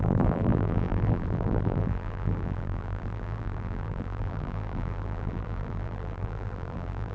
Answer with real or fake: fake